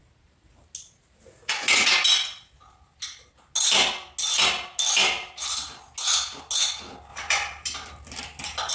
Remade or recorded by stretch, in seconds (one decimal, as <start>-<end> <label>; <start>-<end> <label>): 0.0-8.7 recorded